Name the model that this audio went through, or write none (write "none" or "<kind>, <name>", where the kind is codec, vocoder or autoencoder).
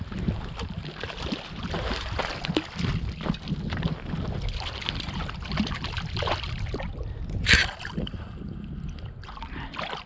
none